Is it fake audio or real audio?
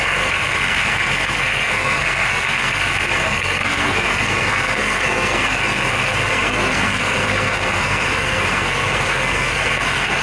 fake